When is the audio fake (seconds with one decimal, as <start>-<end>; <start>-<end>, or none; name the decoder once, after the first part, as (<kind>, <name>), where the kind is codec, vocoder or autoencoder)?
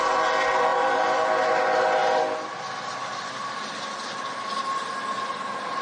none